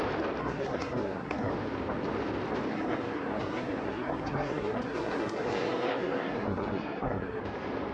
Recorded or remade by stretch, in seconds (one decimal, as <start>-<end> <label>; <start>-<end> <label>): 0.0-0.4 recorded; 0.4-1.5 remade; 1.5-2.7 recorded; 2.7-7.4 remade; 7.4-7.9 recorded